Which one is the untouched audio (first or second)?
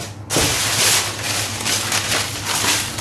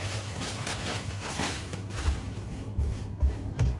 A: first